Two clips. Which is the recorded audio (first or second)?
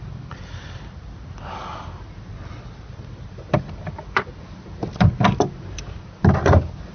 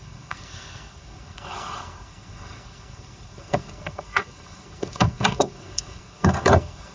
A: first